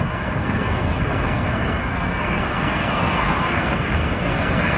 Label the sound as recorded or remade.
remade